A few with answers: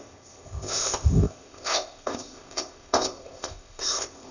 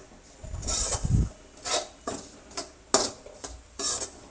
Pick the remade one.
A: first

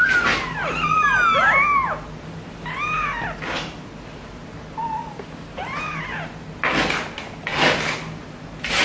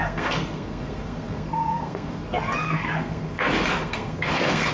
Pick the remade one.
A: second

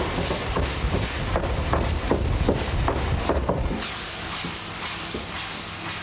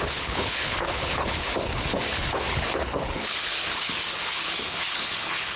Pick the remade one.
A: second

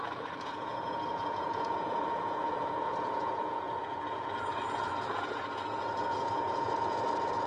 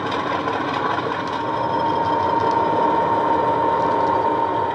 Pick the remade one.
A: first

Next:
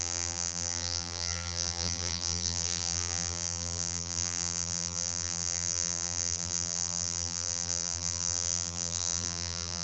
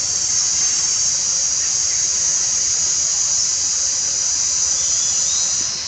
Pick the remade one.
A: first